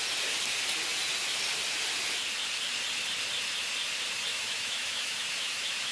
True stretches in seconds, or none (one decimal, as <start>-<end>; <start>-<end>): 0.0-4.3